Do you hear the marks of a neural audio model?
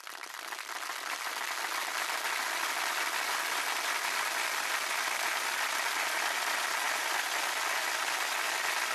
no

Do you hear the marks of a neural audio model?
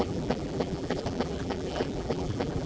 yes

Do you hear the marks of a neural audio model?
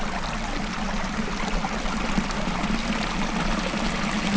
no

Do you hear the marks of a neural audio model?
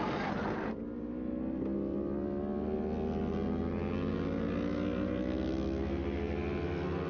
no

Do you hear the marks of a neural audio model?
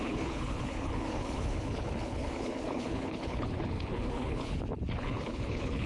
yes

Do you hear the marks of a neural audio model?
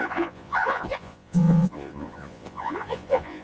yes